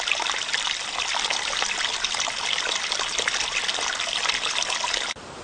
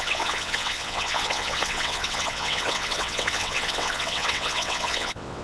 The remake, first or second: second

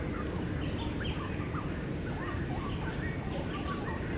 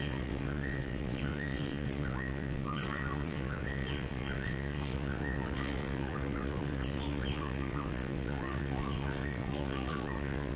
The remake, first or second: second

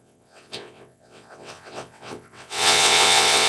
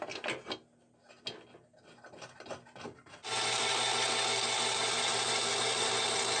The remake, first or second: first